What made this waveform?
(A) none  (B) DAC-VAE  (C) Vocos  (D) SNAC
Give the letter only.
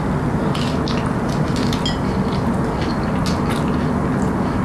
A